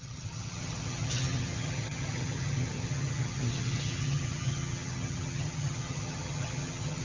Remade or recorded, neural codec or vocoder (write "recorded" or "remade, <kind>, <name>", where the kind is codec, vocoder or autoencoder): remade, vocoder, HiFi-GAN